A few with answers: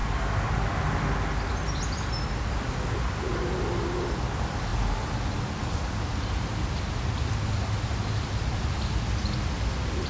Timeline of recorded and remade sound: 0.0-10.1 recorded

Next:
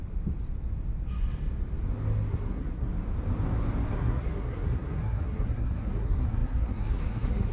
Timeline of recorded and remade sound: 0.0-2.3 recorded; 2.3-2.9 remade; 2.9-3.9 recorded; 3.9-7.5 remade

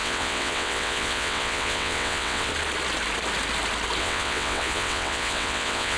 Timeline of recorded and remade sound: 0.0-2.5 remade; 2.5-4.0 recorded; 4.0-6.0 remade

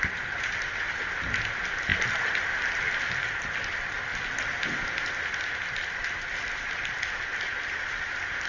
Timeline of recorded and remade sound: 0.0-8.5 recorded

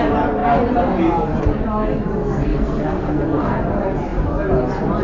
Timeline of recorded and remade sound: 0.0-2.2 recorded; 2.2-3.6 remade; 3.6-5.0 recorded

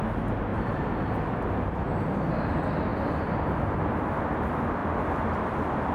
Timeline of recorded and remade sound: 0.0-0.5 recorded; 0.5-1.1 remade; 1.1-5.9 recorded